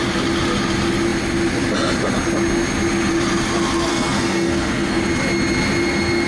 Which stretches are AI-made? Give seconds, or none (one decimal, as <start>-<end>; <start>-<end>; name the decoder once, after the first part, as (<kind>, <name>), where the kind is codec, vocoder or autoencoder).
3.9-5.0 (codec, SNAC)